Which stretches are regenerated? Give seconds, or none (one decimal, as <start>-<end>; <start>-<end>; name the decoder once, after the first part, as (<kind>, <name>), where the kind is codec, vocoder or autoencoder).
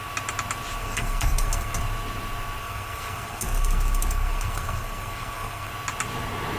0.8-1.8 (codec, SNAC); 2.6-5.7